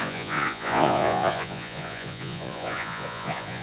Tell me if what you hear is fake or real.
fake